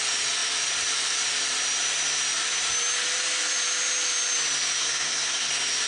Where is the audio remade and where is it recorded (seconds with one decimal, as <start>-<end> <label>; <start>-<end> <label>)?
0.0-4.8 recorded; 4.8-5.5 remade; 5.5-5.9 recorded